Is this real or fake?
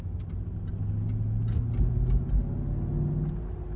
real